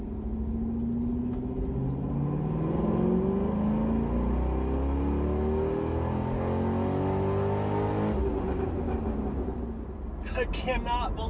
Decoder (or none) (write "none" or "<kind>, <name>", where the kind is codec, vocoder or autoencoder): none